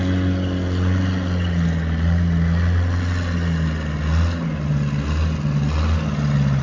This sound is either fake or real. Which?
real